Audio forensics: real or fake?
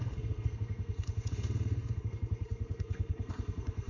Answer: fake